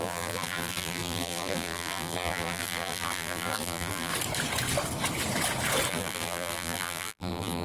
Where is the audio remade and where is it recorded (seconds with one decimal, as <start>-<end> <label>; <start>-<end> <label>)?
0.0-4.1 remade; 4.1-5.9 recorded; 5.9-7.6 remade